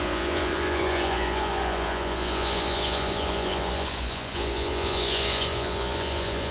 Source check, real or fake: fake